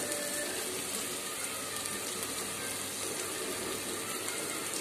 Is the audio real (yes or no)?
yes